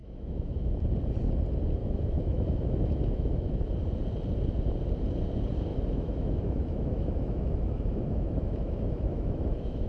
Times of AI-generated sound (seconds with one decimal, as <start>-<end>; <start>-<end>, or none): 0.0-0.8; 1.8-3.7; 5.7-9.9